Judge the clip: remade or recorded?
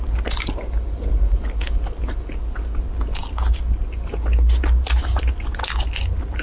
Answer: recorded